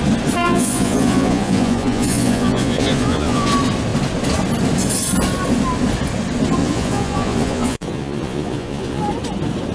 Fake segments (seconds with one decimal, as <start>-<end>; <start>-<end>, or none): 0.4-3.5; 6.6-9.0

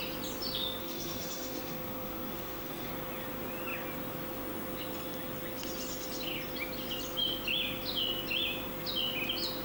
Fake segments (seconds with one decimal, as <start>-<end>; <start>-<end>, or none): 0.8-2.9

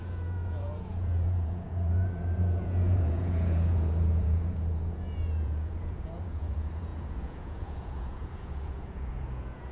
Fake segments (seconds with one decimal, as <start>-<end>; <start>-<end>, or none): 0.0-9.7

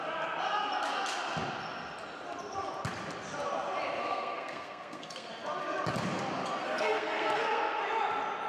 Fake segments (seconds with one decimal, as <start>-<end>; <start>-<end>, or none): 4.0-5.3; 6.6-7.8

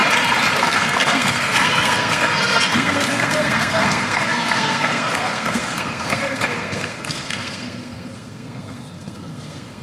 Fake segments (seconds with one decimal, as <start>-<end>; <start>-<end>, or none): 0.6-9.8

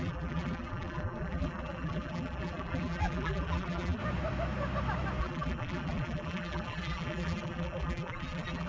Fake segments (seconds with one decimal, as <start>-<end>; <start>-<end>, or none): 0.0-4.0; 5.2-8.7

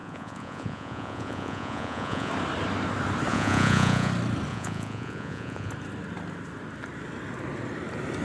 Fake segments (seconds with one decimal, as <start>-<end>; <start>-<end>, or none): 0.0-2.3; 3.3-4.1; 4.5-5.7

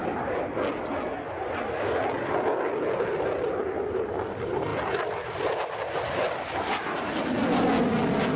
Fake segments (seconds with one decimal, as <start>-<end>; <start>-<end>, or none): none